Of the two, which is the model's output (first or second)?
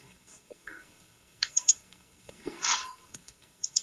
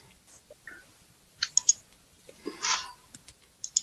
first